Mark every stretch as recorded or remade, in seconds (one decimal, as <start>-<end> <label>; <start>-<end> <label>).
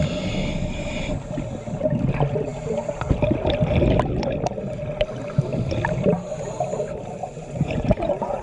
0.0-7.2 recorded; 7.2-8.4 remade